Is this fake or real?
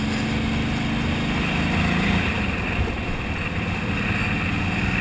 real